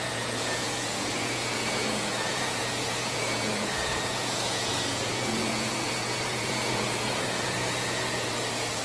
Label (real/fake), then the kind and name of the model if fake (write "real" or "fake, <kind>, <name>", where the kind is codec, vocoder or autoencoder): fake, vocoder, Vocos